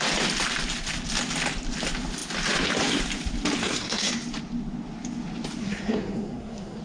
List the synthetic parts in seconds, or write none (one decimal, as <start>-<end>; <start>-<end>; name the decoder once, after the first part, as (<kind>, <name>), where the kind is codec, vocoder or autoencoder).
3.6-4.1 (codec, SNAC); 5.6-6.8